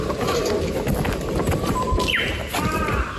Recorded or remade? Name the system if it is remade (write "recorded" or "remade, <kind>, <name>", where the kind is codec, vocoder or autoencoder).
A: recorded